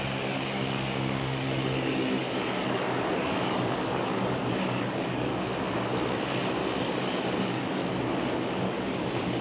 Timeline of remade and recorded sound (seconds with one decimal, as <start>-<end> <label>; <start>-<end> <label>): 0.0-5.3 remade; 5.3-6.8 recorded; 6.8-7.8 remade; 7.8-8.3 recorded; 8.3-9.4 remade